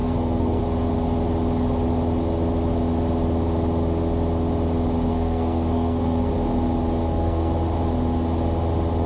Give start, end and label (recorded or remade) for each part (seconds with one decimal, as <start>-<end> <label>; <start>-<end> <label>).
0.0-0.6 remade; 0.6-5.1 recorded; 5.1-6.3 remade; 6.3-7.0 recorded; 7.0-7.5 remade; 7.5-9.1 recorded